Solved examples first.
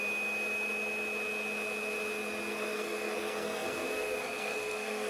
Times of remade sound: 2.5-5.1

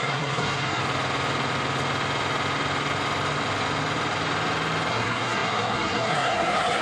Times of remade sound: 0.0-0.8; 4.9-6.8

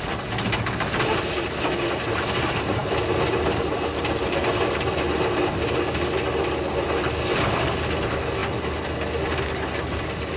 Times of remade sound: none

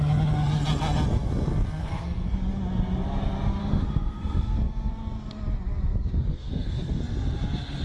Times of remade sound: 1.8-2.4; 3.6-4.9; 6.3-7.0